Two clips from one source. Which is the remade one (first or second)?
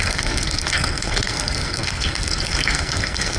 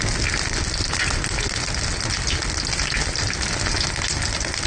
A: first